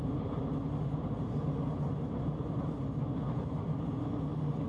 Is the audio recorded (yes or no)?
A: yes